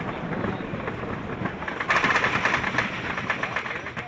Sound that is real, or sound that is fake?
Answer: real